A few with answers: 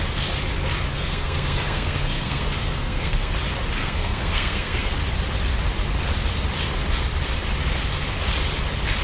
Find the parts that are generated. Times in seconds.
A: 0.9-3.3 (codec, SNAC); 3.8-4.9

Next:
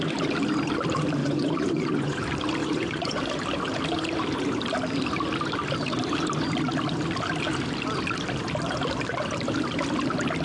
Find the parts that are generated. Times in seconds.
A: 1.2-2.2 (vocoder, Vocos); 2.6-3.2

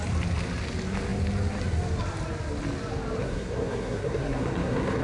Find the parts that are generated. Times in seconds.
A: 3.2-5.0 (codec, SNAC)

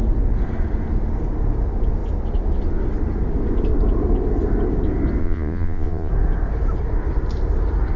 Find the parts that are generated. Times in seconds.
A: 5.2-6.1 (vocoder, Vocos)

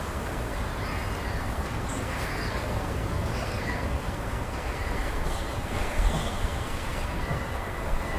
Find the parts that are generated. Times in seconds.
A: 0.0-0.7 (codec, SNAC); 1.4-8.2

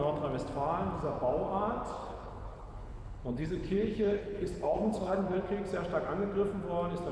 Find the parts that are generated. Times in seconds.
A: 2.0-5.4 (codec, HILCodec)

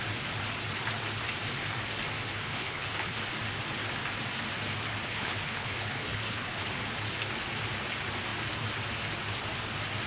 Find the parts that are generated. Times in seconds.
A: 2.3-3.2 (codec, HILCodec); 5.1-6.6